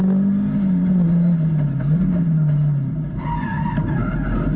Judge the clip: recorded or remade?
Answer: recorded